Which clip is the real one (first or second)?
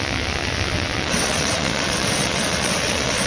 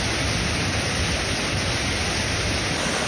second